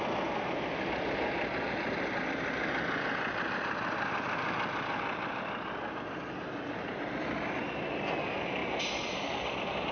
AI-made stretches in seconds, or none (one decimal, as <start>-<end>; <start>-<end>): none